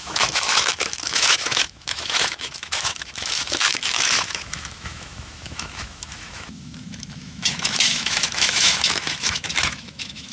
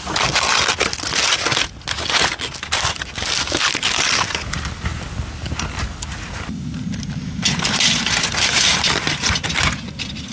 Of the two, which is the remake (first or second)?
first